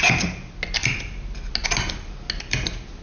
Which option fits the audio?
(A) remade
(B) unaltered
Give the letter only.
B